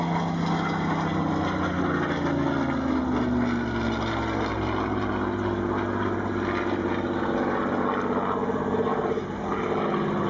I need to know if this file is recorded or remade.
recorded